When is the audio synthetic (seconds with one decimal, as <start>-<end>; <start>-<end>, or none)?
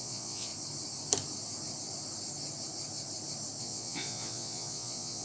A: 0.0-0.5; 3.6-5.2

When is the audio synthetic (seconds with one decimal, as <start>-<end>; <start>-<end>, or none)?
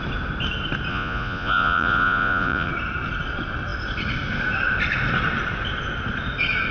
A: 0.9-2.7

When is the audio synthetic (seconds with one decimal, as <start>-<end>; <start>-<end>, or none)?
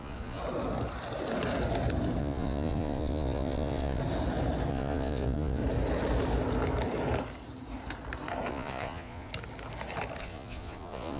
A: 0.0-0.4; 2.2-4.0; 4.7-5.6; 8.5-9.3; 10.2-11.2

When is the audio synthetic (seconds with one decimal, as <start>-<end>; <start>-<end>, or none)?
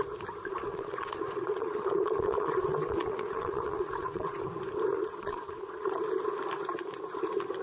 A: 0.7-4.4; 4.9-6.0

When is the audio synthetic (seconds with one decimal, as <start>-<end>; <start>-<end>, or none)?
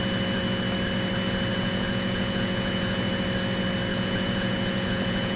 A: 1.5-3.1; 3.9-5.4